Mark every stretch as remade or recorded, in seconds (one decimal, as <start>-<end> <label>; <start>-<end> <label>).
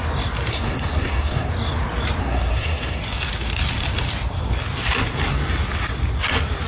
0.0-0.5 recorded; 0.5-1.5 remade; 1.5-2.2 recorded; 2.2-3.0 remade; 3.0-6.7 recorded